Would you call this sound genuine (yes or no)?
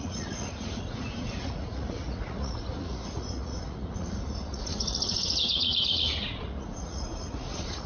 no